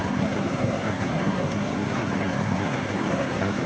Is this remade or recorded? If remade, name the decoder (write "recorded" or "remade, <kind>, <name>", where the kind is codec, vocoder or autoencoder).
remade, codec, SNAC